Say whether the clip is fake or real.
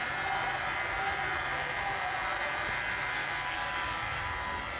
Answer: fake